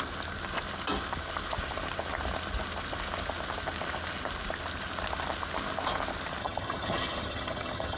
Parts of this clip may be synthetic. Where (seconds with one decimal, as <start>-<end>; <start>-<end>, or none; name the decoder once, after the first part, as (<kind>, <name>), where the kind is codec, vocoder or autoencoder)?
6.4-8.0 (vocoder, HiFi-GAN)